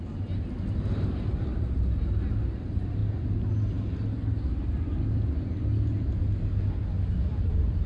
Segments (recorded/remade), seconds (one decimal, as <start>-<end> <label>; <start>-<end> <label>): 0.0-3.0 remade; 3.0-7.4 recorded; 7.4-7.9 remade